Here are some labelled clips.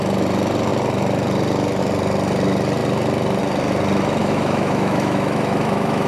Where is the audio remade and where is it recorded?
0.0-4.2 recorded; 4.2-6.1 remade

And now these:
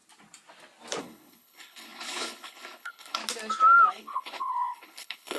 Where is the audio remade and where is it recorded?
0.0-1.0 recorded; 1.0-3.2 remade; 3.2-3.9 recorded; 3.9-5.4 remade

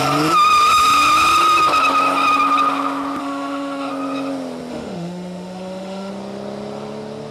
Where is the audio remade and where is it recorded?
0.0-3.2 recorded; 3.2-3.9 remade; 3.9-4.7 recorded; 4.7-6.1 remade; 6.1-7.3 recorded

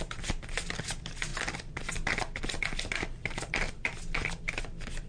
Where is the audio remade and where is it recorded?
0.0-5.1 recorded

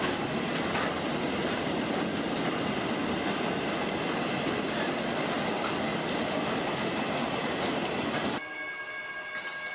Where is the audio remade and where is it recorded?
0.0-9.7 recorded

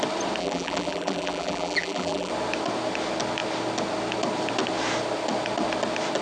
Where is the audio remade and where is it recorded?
0.0-0.4 recorded; 0.4-2.3 remade; 2.3-6.2 recorded